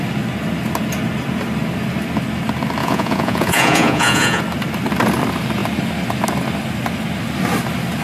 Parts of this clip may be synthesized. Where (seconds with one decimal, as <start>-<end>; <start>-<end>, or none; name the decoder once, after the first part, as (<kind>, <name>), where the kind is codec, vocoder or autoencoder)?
2.8-4.4 (vocoder, Vocos)